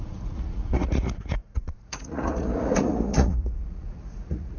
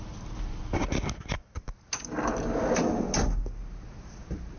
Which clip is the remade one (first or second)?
first